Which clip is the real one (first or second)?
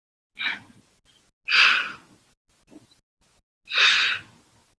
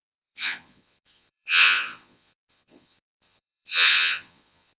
first